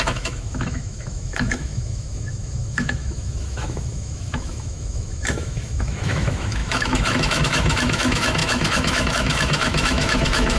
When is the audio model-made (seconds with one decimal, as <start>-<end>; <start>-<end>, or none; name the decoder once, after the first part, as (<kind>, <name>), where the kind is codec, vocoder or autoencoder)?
0.0-10.6 (autoencoder, DAC-VAE)